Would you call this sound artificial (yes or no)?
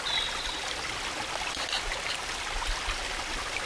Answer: no